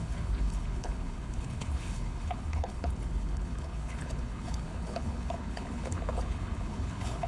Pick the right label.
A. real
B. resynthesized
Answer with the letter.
B